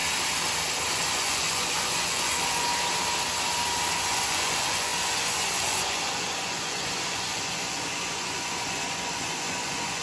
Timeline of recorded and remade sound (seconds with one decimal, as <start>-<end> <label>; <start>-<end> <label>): 0.0-0.9 recorded; 0.9-2.7 remade; 2.7-3.9 recorded; 3.9-10.0 remade